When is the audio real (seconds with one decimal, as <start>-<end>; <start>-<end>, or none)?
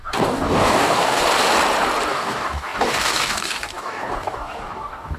1.2-2.1